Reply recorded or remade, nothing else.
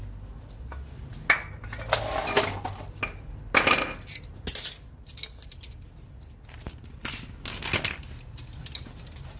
recorded